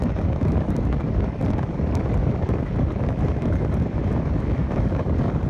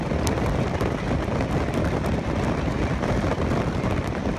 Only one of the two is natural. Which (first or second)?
second